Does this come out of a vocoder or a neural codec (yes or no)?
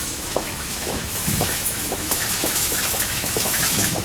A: yes